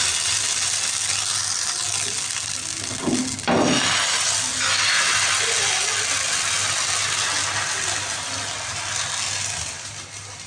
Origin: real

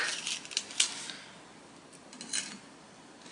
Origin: real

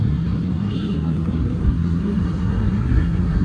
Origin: fake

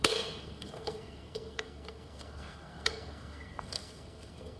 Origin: fake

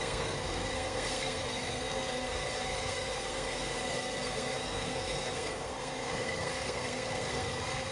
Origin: fake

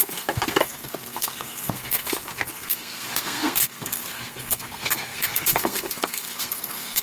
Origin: fake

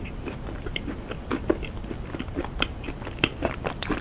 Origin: real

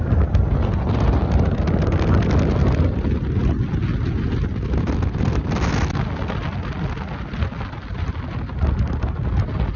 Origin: real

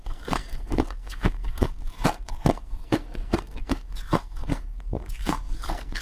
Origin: fake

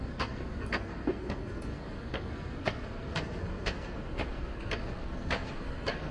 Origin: fake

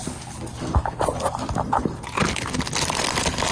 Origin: real